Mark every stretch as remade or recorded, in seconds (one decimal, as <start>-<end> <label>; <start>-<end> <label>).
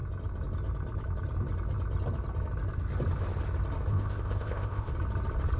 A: 0.0-3.9 recorded; 3.9-4.9 remade; 4.9-5.6 recorded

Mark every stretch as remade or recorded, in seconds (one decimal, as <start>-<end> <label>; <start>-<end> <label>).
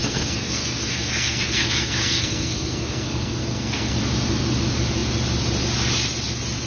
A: 0.0-4.0 remade; 4.0-6.7 recorded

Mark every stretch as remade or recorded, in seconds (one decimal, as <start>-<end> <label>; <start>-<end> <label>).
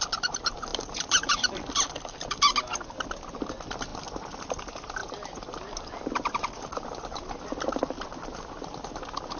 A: 0.0-0.7 recorded; 0.7-1.6 remade; 1.6-9.4 recorded